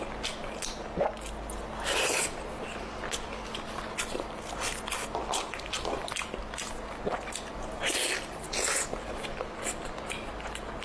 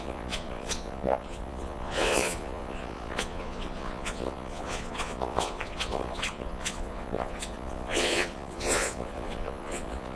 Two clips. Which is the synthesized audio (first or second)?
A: second